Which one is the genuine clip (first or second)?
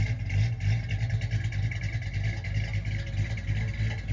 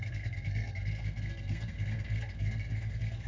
first